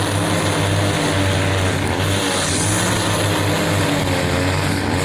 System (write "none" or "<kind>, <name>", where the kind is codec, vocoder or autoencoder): none